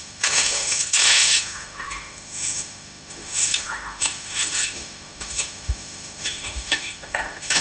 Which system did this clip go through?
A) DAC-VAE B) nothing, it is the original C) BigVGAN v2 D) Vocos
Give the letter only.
A